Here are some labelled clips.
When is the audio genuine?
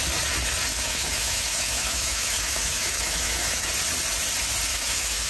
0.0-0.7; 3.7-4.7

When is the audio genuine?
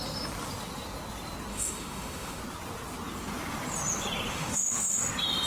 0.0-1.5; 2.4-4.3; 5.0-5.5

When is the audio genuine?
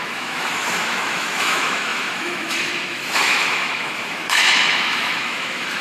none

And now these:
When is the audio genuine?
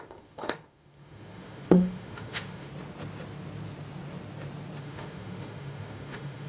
2.7-4.8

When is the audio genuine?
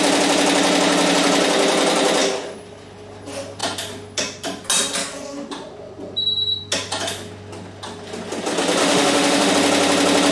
0.0-8.8; 9.5-10.3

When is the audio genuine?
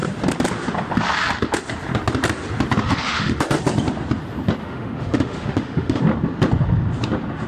0.0-2.9; 3.6-4.6; 6.0-7.5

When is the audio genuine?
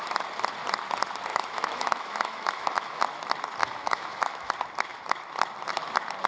0.0-1.3; 3.0-3.6; 4.5-6.3